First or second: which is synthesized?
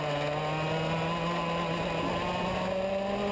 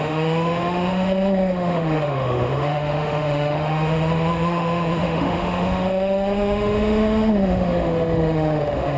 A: second